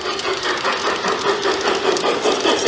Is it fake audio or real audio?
real